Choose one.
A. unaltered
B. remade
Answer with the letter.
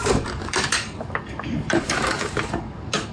B